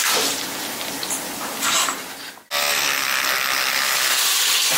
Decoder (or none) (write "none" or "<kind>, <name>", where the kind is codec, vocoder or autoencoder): none